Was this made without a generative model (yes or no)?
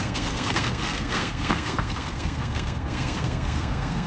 no